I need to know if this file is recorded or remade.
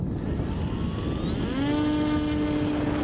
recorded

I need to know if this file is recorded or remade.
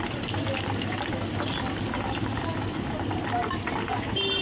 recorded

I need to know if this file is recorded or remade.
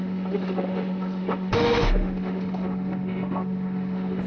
remade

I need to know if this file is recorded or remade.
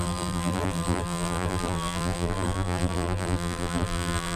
remade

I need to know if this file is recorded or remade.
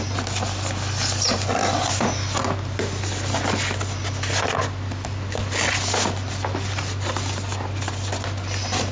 recorded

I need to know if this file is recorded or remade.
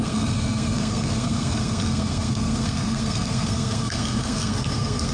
remade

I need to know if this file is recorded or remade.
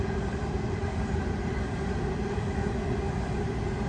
recorded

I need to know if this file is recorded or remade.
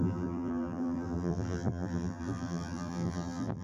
remade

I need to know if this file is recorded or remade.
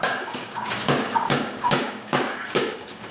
remade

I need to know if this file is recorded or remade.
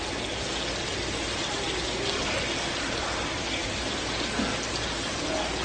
recorded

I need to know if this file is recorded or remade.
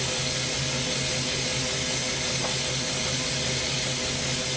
recorded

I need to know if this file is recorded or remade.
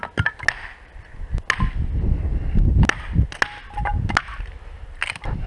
recorded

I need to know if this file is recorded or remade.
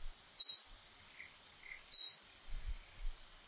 recorded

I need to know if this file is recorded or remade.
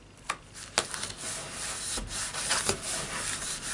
recorded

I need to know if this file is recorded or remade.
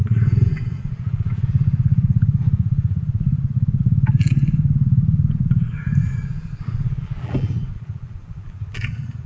remade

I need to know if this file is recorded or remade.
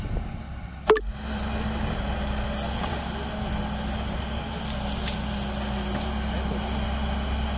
recorded